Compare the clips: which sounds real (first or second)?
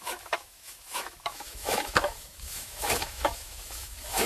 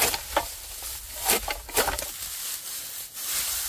second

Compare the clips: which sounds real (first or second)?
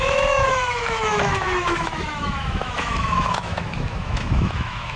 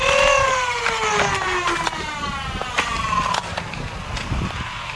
second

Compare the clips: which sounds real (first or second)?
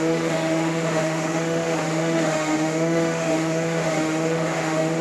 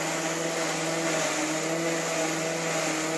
second